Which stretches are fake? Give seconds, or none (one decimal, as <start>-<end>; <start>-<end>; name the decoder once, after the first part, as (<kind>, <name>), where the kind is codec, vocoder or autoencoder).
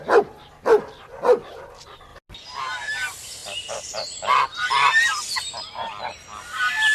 none